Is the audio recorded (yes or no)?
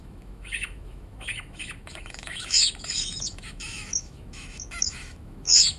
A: no